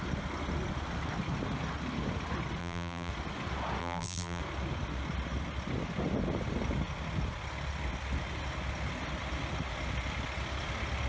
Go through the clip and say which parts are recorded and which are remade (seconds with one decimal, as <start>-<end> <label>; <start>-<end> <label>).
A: 0.0-2.6 recorded; 2.6-3.1 remade; 3.1-3.8 recorded; 3.8-4.4 remade; 4.4-11.1 recorded